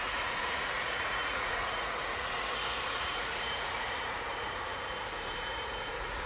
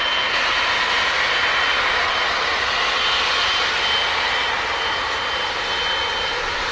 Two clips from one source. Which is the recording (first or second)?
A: second